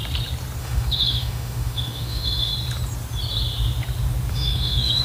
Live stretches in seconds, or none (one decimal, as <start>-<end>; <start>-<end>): 0.0-0.6; 2.5-4.3